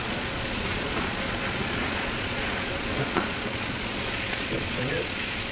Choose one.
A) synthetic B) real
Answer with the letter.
A